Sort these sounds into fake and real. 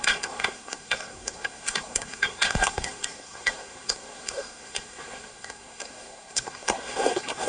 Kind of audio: fake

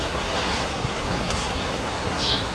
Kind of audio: fake